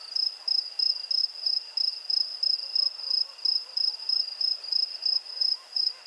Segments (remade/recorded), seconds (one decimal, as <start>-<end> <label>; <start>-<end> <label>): 0.0-6.1 recorded